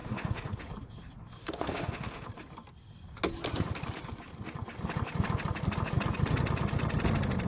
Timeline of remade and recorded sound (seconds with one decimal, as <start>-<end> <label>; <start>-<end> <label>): 0.0-0.6 remade; 0.6-1.4 recorded; 1.4-2.3 remade; 2.3-7.5 recorded